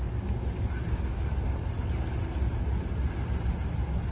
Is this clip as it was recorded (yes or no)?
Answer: yes